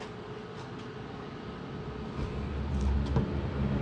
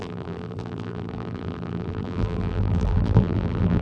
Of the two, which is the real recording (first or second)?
first